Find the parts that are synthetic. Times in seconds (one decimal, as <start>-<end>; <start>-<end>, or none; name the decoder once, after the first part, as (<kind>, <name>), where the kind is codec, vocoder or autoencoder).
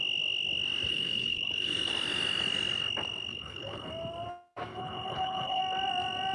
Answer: 0.9-1.9 (codec, HILCodec); 3.3-3.9; 4.7-5.6